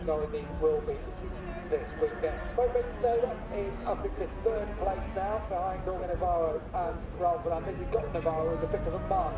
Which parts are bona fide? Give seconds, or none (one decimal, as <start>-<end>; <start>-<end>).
0.0-9.4